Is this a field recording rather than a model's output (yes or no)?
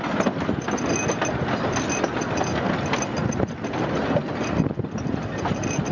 yes